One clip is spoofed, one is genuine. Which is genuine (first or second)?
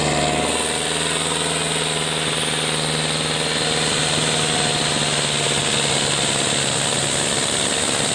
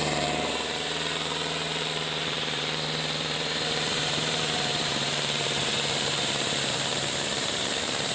first